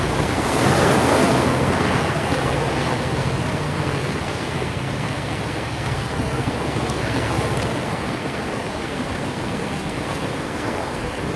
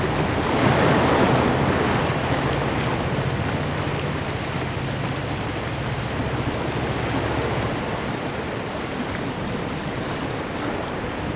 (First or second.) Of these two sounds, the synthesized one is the first